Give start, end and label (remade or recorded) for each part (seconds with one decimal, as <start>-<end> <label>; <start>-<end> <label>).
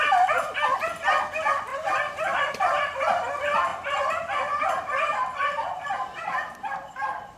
0.0-1.7 recorded; 1.7-2.5 remade; 2.5-6.1 recorded; 6.1-7.0 remade; 7.0-7.4 recorded